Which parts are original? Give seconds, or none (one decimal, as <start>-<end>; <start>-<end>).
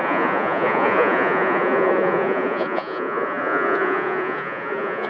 none